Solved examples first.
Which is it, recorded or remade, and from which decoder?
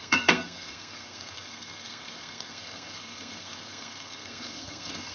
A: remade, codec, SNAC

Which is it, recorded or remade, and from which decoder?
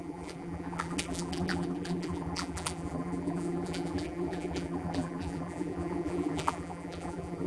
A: remade, vocoder, BigVGAN v2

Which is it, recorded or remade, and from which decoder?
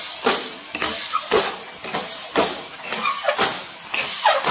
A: recorded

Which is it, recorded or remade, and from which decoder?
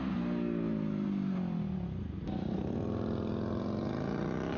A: recorded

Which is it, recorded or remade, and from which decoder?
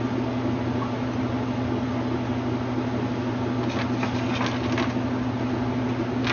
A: recorded